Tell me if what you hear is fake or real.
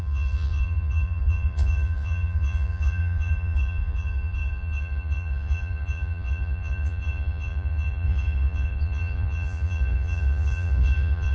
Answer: fake